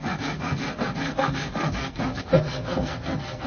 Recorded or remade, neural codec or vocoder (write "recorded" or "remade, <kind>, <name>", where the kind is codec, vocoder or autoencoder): remade, codec, SNAC